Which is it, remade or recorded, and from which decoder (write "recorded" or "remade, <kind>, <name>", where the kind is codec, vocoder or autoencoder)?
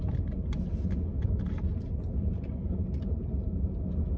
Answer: recorded